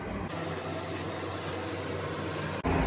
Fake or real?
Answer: real